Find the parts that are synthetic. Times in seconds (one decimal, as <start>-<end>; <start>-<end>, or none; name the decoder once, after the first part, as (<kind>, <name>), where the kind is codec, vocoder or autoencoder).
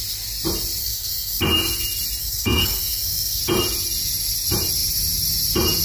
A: 0.8-1.4 (codec, SNAC); 2.2-3.4